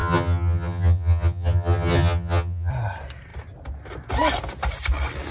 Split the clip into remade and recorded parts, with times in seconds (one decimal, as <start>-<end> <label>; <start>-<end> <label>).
0.0-2.7 remade; 2.7-5.3 recorded